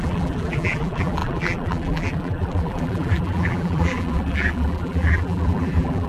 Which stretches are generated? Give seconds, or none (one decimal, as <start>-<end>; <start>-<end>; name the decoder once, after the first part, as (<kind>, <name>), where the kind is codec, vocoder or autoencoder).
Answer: 0.0-6.1 (vocoder, BigVGAN v2)